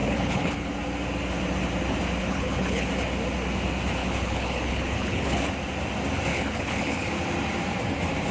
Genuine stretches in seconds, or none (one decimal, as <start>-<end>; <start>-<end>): 0.7-2.2; 2.9-4.0; 5.5-6.3; 7.1-8.3